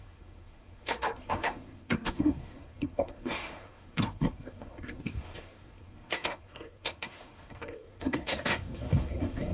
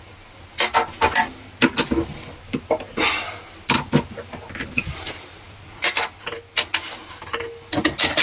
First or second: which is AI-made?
first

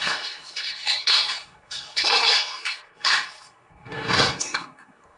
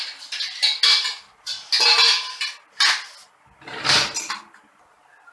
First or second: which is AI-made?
first